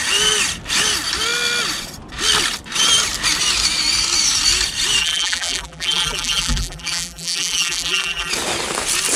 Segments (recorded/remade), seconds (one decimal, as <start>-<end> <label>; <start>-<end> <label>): 0.0-5.0 recorded; 5.0-8.3 remade; 8.3-9.2 recorded